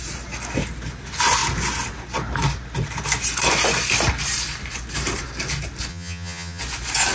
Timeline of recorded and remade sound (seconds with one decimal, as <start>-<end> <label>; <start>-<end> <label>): 0.0-5.9 recorded; 5.9-6.6 remade; 6.6-7.1 recorded